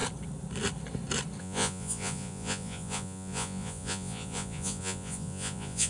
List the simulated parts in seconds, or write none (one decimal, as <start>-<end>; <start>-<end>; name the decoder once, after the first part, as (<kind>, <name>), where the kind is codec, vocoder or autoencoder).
1.4-5.9 (vocoder, Vocos)